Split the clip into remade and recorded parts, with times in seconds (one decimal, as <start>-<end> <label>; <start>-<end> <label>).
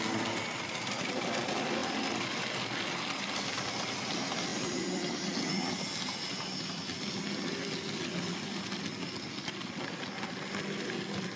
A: 0.0-11.4 recorded